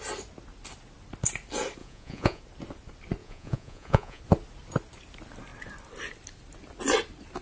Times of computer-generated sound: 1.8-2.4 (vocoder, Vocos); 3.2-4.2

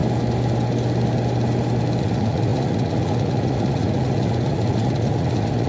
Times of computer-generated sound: 2.0-5.7 (vocoder, Vocos)